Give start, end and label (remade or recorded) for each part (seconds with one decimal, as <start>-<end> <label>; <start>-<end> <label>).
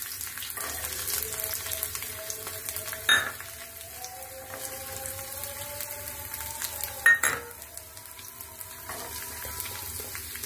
0.0-10.5 recorded